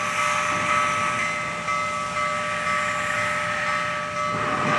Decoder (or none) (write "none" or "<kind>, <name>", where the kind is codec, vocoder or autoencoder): none